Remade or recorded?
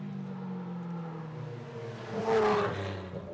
recorded